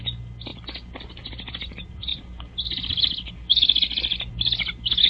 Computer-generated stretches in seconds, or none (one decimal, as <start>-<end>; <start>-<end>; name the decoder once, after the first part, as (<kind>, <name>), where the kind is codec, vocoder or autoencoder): none